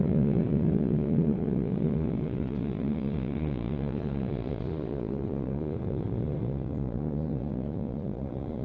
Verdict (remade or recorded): remade